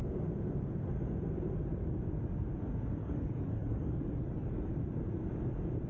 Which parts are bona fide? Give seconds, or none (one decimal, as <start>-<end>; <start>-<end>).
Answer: 0.0-3.0; 4.7-5.9